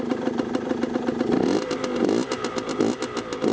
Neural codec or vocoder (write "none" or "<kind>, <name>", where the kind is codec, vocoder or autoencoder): none